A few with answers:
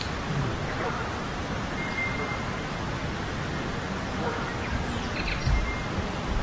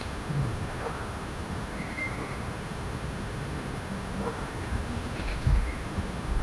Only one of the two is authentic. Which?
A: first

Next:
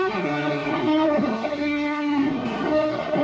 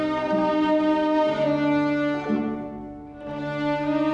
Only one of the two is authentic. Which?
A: second